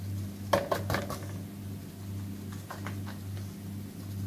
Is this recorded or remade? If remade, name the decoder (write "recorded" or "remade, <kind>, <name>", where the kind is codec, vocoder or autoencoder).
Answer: recorded